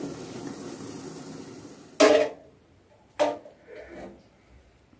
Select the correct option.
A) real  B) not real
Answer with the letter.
A